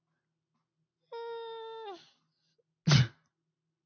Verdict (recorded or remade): recorded